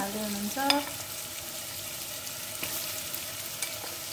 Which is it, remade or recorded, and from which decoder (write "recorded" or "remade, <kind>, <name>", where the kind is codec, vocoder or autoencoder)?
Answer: recorded